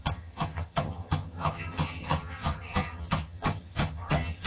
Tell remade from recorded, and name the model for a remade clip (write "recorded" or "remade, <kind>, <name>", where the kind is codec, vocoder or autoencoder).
remade, vocoder, HiFi-GAN